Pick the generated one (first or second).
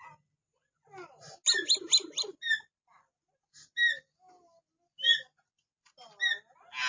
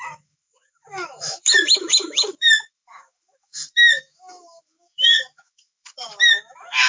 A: second